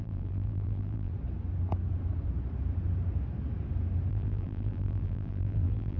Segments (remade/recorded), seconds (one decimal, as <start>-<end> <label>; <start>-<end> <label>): 0.0-1.1 remade; 1.1-4.1 recorded; 4.1-6.0 remade